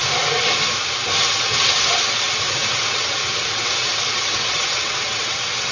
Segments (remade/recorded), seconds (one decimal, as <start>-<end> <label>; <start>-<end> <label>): 0.0-1.3 recorded; 1.3-5.7 remade